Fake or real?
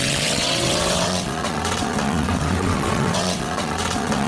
fake